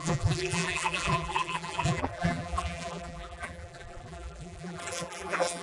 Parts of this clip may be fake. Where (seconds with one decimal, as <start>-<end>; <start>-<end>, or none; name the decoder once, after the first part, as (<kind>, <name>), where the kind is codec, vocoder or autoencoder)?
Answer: 0.0-5.6 (vocoder, BigVGAN v2)